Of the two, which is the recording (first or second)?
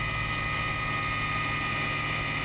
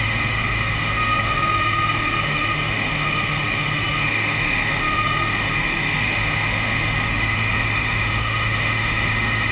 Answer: first